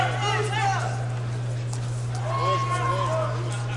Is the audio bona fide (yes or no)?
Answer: yes